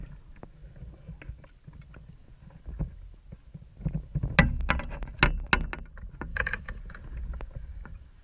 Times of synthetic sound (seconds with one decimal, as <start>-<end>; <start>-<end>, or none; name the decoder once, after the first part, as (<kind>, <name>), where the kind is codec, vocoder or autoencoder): 6.3-6.8 (autoencoder, DAC-VAE)